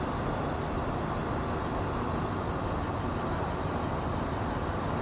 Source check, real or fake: real